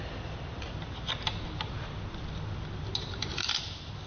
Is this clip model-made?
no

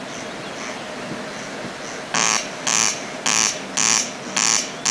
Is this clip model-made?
no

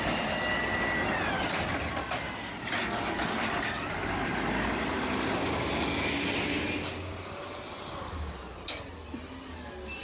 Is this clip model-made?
no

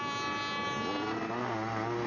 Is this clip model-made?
no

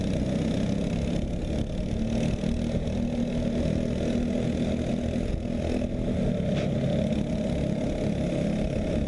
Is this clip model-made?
no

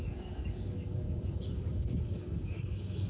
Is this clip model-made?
yes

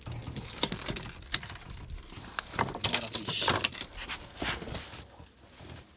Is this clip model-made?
no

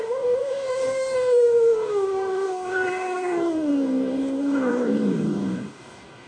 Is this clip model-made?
yes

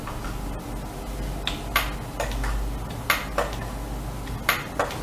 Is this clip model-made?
no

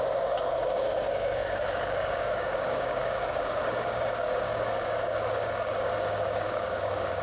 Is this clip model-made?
yes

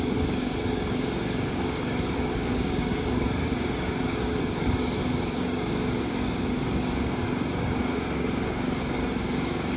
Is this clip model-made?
yes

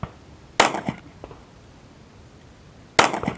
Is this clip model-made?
no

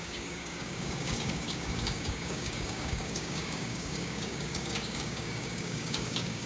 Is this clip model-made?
yes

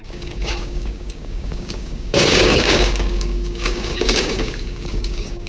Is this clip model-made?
yes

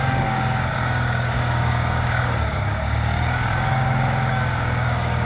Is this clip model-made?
yes